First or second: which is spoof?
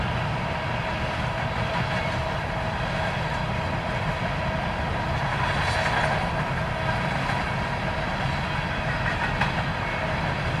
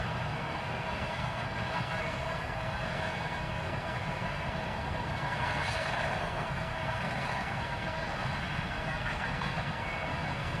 second